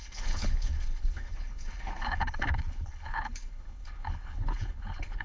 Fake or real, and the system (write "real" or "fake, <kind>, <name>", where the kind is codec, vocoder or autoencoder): fake, codec, HILCodec